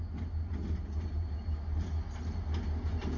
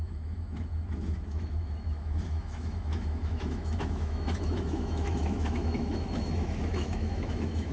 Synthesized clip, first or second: second